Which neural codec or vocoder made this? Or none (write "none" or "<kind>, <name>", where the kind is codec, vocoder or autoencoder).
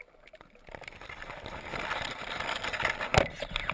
none